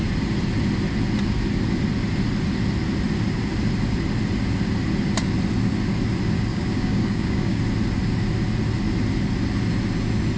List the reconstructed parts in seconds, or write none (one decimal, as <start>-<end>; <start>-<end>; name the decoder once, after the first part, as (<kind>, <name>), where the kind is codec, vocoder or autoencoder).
6.5-7.6 (codec, DAC)